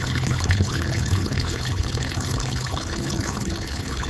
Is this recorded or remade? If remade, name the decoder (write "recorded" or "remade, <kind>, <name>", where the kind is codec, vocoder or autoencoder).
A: remade, codec, HILCodec